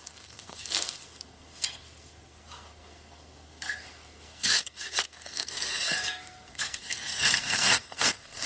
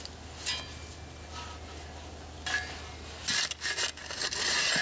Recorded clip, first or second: second